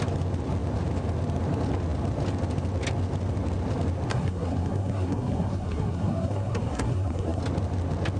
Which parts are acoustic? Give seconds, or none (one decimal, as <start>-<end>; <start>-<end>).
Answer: 0.0-4.1; 7.4-8.2